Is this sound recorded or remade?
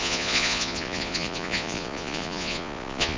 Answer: remade